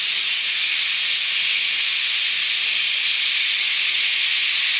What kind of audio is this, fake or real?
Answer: real